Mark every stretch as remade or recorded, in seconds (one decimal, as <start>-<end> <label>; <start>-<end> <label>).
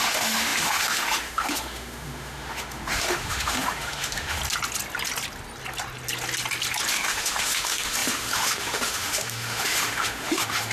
0.0-4.4 remade; 4.4-6.9 recorded; 6.9-10.7 remade